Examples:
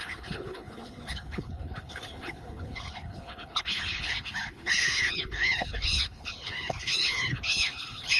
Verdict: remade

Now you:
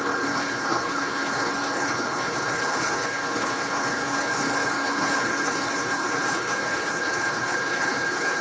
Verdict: remade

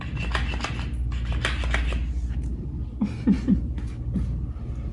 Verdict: recorded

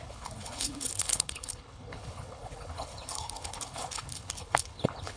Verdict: remade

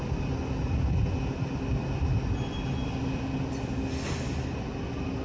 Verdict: recorded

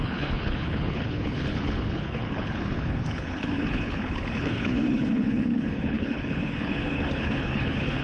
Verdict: remade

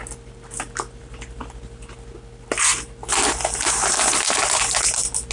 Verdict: recorded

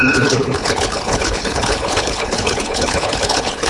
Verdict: remade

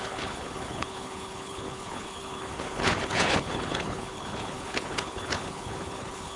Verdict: remade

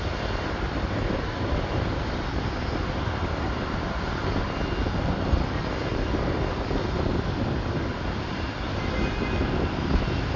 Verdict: recorded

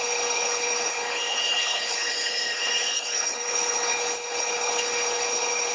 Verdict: remade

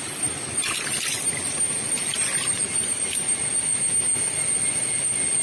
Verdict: recorded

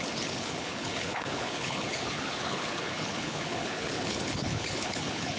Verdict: remade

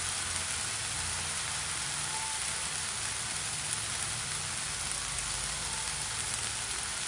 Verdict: recorded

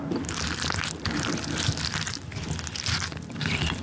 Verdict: recorded